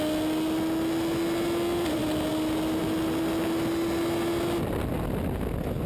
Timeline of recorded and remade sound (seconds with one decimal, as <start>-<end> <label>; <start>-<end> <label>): 0.0-5.9 recorded